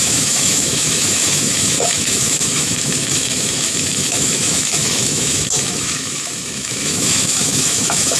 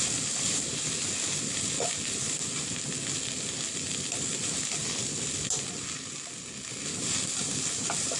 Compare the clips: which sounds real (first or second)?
second